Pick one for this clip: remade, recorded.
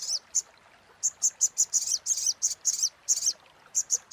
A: recorded